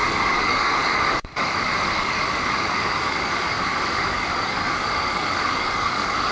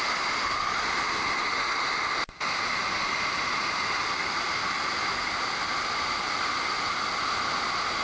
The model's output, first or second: first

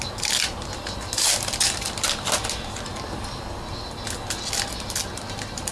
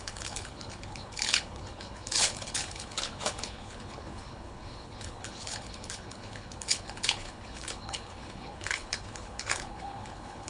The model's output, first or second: second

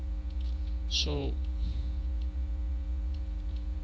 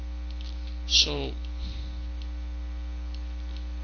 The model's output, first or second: first